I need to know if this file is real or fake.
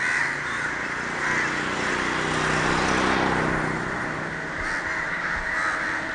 real